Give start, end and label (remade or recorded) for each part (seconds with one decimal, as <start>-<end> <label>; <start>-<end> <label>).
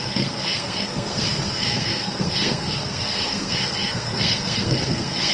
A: 0.0-5.3 remade